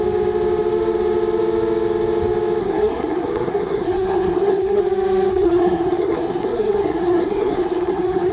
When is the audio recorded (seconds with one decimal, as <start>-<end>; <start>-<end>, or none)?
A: 0.0-2.6; 4.8-5.3